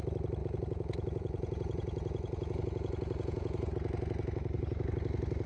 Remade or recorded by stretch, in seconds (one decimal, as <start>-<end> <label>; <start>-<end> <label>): 0.0-0.4 recorded; 0.4-3.7 remade; 3.7-5.5 recorded